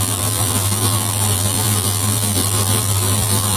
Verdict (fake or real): fake